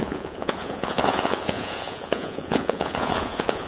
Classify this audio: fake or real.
fake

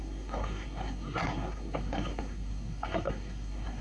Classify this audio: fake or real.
fake